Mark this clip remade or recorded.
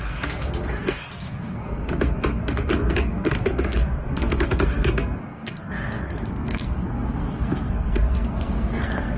remade